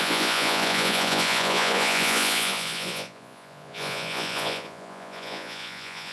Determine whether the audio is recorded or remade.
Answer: remade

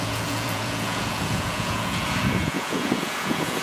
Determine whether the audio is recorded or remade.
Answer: remade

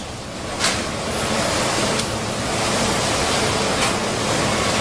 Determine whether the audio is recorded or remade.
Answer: recorded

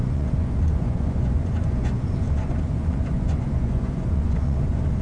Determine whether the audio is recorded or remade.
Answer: remade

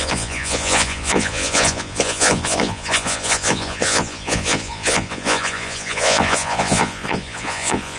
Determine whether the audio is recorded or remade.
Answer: remade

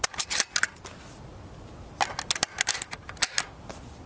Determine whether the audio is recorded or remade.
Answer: recorded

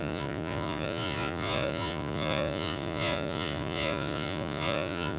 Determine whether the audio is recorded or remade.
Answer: remade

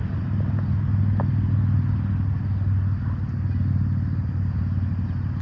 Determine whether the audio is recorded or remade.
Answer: recorded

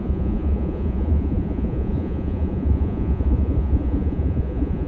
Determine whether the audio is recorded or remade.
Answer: remade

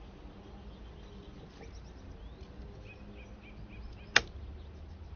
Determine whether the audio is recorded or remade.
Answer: recorded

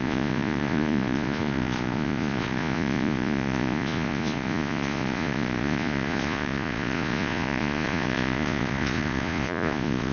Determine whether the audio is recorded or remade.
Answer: remade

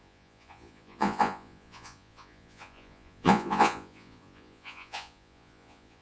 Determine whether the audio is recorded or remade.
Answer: remade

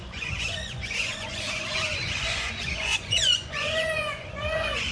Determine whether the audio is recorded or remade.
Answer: remade